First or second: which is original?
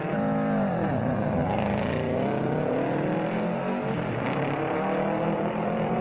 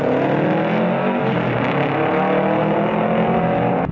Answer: second